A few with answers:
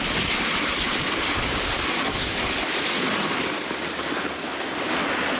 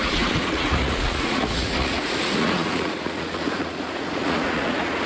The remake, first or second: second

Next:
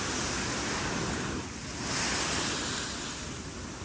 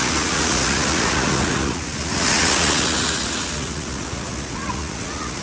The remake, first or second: second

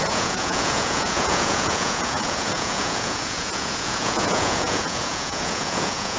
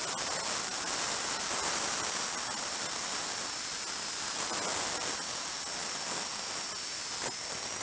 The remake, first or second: first